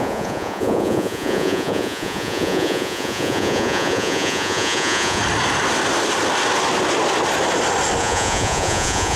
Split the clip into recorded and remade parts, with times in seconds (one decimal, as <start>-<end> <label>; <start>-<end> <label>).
0.0-5.2 remade; 5.2-8.0 recorded; 8.0-9.2 remade